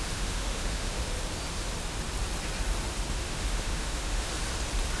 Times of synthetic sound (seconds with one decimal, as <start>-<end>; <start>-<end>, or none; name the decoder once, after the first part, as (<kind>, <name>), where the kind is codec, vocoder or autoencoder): 0.0-1.0 (autoencoder, DAC-VAE); 3.1-4.3